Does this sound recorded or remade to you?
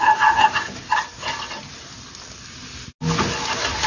recorded